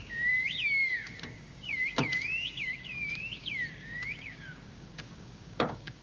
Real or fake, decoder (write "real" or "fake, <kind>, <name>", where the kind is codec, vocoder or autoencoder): fake, codec, DAC